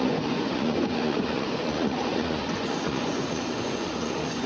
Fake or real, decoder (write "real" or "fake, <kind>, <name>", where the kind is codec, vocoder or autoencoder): fake, vocoder, Vocos